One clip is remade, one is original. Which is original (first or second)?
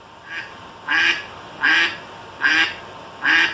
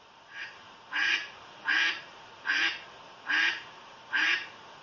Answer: first